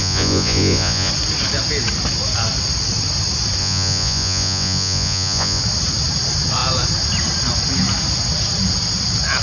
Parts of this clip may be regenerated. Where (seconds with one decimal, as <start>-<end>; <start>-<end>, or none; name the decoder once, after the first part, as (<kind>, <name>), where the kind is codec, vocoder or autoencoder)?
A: 0.0-1.1 (vocoder, Vocos); 3.6-5.6